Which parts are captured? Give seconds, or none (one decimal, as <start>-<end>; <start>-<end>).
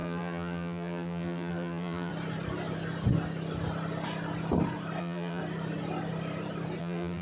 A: 2.1-5.0; 5.4-6.8